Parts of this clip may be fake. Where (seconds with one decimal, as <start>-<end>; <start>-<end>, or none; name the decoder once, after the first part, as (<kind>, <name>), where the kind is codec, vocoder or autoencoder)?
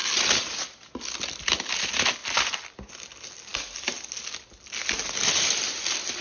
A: none